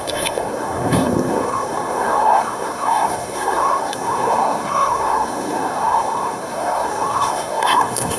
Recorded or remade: remade